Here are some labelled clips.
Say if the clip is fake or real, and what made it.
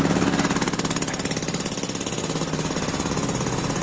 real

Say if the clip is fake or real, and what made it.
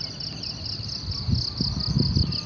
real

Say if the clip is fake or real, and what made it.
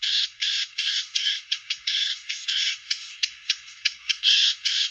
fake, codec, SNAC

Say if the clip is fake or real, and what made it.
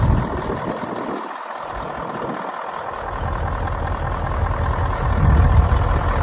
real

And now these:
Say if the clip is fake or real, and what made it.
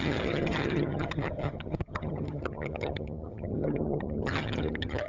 fake, vocoder, HiFi-GAN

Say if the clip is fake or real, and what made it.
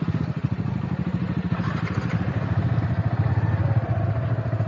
real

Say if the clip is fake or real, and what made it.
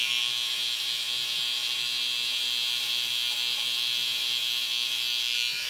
fake, autoencoder, DAC-VAE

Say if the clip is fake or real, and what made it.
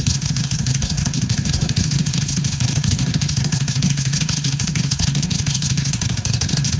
fake, codec, SNAC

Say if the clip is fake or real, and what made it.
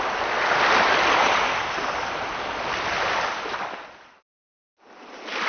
real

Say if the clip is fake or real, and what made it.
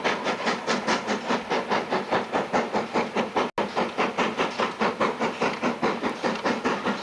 real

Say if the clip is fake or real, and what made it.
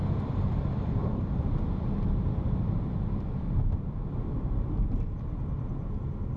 fake, vocoder, BigVGAN v2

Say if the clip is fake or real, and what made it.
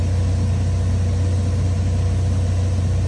real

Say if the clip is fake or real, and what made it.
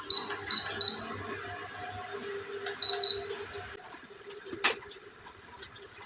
real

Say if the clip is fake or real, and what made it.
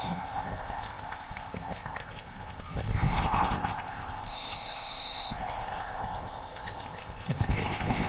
fake, codec, ZipCodec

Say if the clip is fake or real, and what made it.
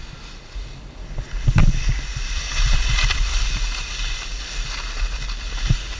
real